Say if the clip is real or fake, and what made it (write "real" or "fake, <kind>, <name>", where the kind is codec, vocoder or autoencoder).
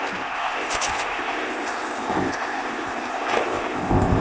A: fake, codec, ZipCodec